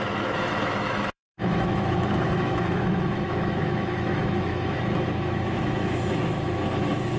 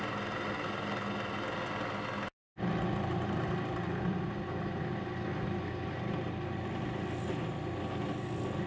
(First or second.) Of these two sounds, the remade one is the first